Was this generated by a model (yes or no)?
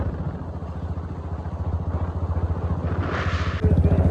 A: no